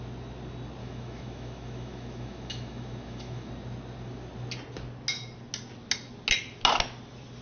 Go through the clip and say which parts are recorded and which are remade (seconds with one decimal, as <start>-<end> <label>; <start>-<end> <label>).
0.0-0.8 recorded; 0.8-3.5 remade; 3.5-7.4 recorded